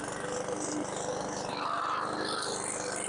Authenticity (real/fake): real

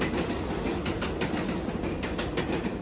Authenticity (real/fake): real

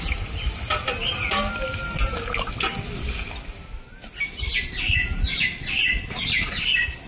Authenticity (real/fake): real